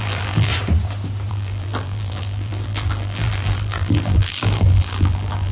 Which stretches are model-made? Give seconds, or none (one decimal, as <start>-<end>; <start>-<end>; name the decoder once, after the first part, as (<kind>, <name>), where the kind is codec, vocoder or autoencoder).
0.0-0.5 (vocoder, BigVGAN v2); 1.3-5.5

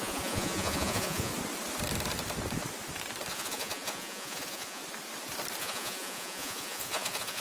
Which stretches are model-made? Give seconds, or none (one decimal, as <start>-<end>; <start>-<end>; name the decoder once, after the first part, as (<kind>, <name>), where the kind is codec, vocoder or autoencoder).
0.0-1.3 (vocoder, Vocos); 3.3-4.8; 5.6-7.4

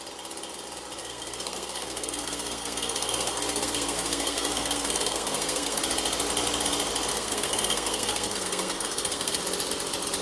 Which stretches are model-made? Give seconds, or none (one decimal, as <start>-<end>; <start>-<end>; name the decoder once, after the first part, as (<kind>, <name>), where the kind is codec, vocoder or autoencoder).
1.0-5.8 (codec, SNAC); 7.1-9.4

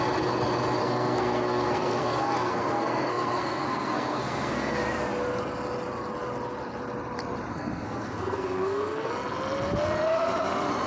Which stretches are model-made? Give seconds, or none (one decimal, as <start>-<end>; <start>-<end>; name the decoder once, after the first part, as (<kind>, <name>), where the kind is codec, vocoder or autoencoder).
0.8-4.8 (codec, SNAC); 7.5-9.1

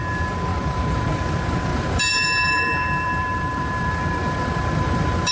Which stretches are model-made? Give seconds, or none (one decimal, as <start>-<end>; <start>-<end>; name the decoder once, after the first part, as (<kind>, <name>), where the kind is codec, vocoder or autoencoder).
0.5-1.1 (vocoder, BigVGAN v2); 1.7-5.3

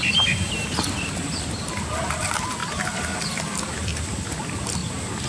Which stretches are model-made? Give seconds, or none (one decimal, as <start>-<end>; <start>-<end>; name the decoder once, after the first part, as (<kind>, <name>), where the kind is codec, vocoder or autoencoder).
none